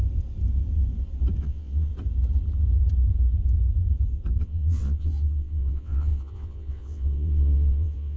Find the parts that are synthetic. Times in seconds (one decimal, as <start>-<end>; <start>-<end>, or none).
1.4-1.9; 4.4-8.2